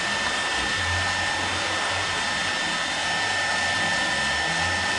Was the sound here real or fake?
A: real